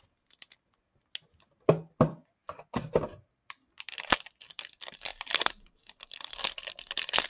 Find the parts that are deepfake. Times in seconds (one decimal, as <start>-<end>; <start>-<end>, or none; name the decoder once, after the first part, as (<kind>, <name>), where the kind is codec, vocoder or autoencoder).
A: none